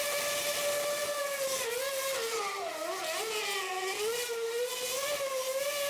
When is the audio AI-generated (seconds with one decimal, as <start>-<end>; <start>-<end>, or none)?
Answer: none